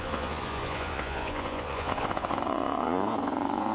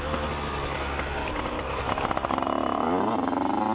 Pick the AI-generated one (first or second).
first